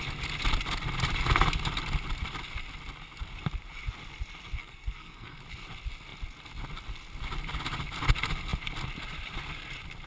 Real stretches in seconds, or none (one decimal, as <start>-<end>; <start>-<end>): 0.0-4.6; 5.4-10.1